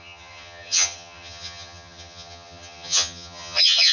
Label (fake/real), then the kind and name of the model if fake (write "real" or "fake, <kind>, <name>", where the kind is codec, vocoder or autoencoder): fake, vocoder, HiFi-GAN